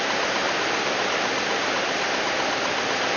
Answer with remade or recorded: recorded